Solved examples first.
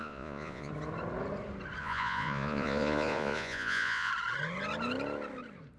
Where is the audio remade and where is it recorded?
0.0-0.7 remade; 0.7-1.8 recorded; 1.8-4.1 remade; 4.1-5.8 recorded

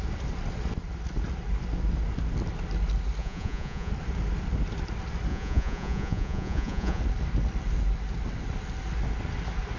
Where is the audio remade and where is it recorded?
0.0-3.2 recorded; 3.2-3.9 remade; 3.9-5.3 recorded; 5.3-7.0 remade; 7.0-9.8 recorded